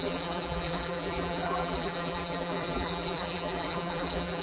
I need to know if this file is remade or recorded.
remade